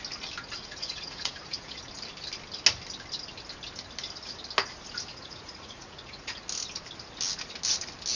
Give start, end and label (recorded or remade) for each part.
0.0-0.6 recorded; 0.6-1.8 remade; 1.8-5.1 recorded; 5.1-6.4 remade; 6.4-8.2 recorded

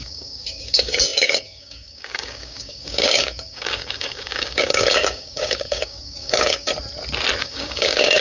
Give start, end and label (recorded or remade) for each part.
0.0-6.7 remade; 6.7-7.4 recorded; 7.4-8.2 remade

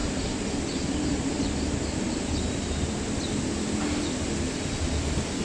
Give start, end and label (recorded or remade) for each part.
0.0-5.4 recorded